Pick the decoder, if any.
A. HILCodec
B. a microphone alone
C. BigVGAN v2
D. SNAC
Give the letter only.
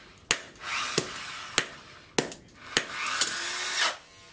B